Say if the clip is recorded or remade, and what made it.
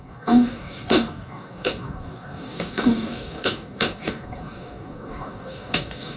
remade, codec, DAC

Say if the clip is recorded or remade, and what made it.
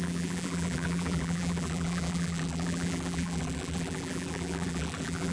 remade, vocoder, BigVGAN v2